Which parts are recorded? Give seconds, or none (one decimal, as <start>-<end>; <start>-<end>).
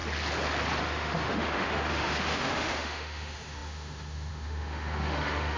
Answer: 0.0-0.8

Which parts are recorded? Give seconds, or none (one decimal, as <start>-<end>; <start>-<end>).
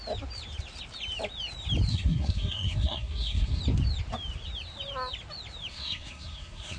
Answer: 0.0-1.9; 3.6-5.7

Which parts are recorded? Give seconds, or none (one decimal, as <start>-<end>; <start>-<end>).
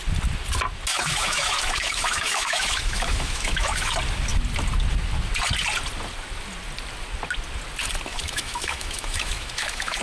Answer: 0.0-0.9; 3.9-8.1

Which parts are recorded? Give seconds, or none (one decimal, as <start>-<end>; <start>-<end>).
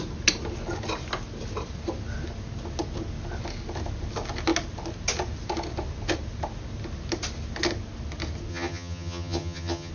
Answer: 0.0-8.5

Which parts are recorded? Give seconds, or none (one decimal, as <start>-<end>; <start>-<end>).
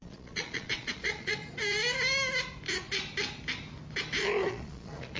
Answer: 1.4-4.5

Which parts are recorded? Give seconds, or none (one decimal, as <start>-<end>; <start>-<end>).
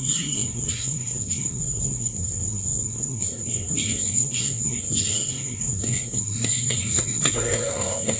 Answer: none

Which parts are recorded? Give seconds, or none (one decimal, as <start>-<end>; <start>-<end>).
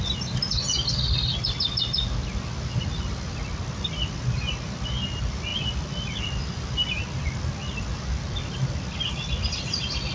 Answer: 0.0-5.5; 7.4-7.9; 8.9-10.1